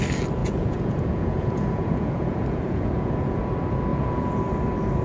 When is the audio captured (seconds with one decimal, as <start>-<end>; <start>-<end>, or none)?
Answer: 0.0-0.4; 3.4-3.9; 4.4-5.0